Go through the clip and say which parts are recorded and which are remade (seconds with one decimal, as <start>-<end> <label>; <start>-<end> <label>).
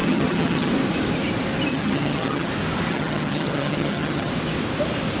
0.0-0.7 remade; 0.7-1.7 recorded; 1.7-2.5 remade; 2.5-2.9 recorded; 2.9-4.3 remade; 4.3-5.2 recorded